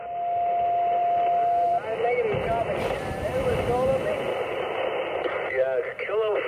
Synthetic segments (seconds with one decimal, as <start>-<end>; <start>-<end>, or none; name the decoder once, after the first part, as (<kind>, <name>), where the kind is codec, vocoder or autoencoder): none